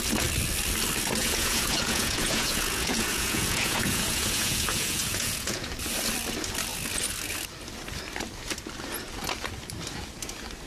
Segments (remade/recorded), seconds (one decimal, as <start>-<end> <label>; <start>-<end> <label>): 0.0-1.2 recorded; 1.2-5.7 remade; 5.7-10.7 recorded